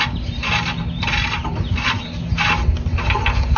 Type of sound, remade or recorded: recorded